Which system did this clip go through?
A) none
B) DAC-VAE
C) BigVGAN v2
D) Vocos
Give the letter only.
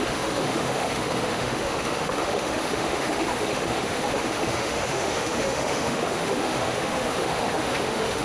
B